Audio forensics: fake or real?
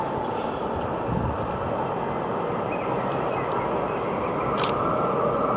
real